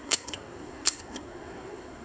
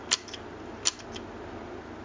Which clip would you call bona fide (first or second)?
second